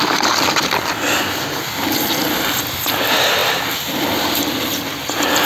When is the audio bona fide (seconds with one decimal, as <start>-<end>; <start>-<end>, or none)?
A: 0.0-5.5